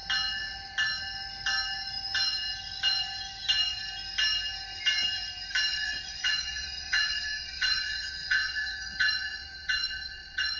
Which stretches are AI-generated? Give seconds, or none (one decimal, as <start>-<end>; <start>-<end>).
5.7-10.6